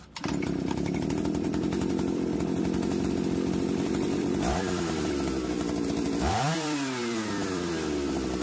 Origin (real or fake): fake